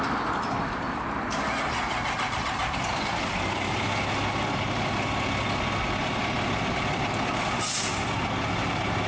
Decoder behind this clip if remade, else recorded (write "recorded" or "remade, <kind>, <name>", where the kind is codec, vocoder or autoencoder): recorded